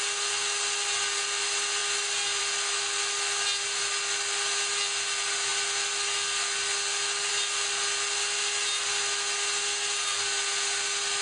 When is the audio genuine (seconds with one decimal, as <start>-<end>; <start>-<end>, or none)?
0.0-11.2